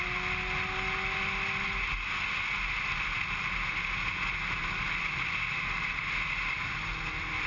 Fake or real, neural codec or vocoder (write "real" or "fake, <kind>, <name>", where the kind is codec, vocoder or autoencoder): real